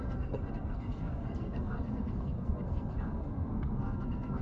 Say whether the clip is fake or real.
fake